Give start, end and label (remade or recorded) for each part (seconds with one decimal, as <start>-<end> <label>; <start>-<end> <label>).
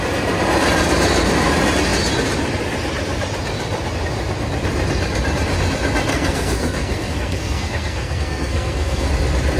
0.0-6.1 recorded; 6.1-9.1 remade; 9.1-9.6 recorded